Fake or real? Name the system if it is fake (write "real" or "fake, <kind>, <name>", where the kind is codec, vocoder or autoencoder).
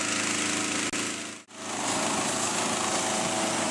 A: real